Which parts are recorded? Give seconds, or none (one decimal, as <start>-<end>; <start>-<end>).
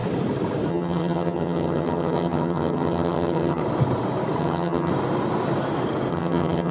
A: 0.0-0.7; 3.6-4.4; 4.9-6.1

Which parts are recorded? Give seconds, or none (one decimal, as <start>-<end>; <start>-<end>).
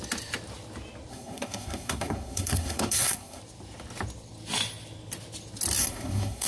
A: 0.0-1.1; 3.4-5.8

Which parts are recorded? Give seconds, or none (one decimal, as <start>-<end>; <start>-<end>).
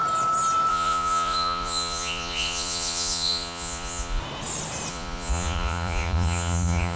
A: 0.0-0.7; 4.2-4.9